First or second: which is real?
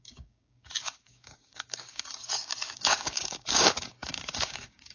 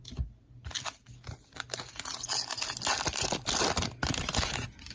second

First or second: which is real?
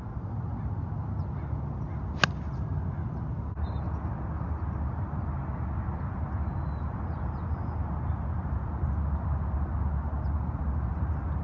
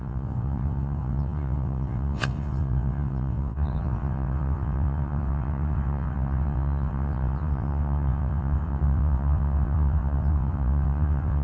first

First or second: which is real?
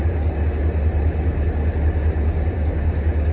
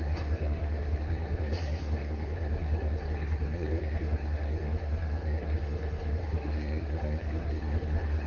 first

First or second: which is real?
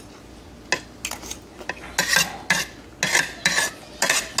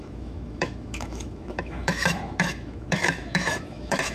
first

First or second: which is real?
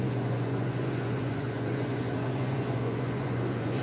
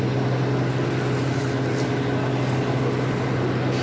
second